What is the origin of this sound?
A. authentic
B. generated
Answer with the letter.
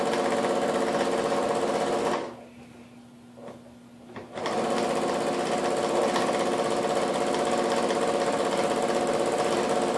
A